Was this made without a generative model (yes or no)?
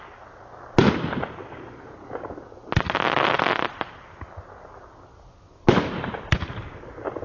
yes